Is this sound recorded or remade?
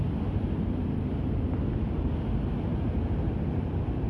recorded